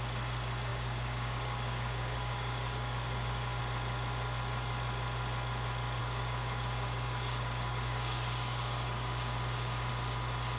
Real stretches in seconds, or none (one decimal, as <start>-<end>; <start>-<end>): 0.0-0.7; 3.6-6.0; 9.9-10.6

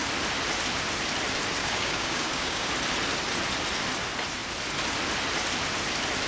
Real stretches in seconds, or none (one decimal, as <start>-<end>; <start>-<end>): 0.0-1.6; 2.7-6.3

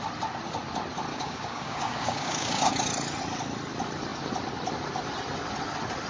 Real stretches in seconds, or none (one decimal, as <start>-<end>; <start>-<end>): 0.0-1.1; 2.7-6.1

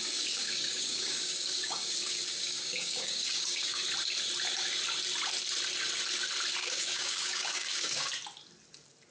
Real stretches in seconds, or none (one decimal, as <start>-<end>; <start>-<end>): 3.8-6.6; 8.1-9.1

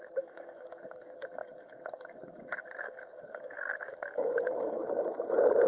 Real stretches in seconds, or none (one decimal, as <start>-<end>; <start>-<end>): 4.8-5.7

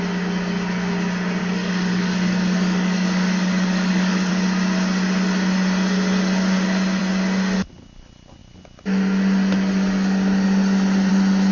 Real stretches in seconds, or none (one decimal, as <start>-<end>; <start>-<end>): 0.0-1.4; 4.3-11.5